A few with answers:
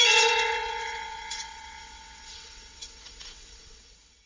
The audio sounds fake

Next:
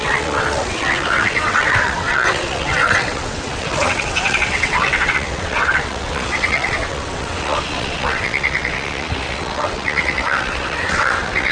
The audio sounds fake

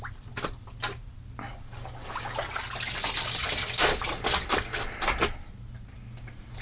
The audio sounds real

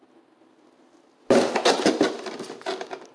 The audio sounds real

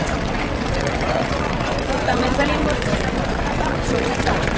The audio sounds fake